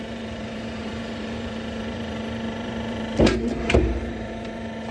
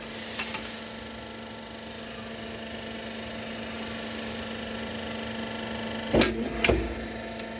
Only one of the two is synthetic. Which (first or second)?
first